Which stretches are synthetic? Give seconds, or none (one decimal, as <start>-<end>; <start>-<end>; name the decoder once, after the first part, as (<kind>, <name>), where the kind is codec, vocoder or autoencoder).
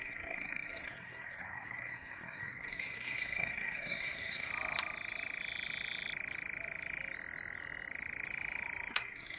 0.0-4.5 (codec, SNAC); 8.9-9.4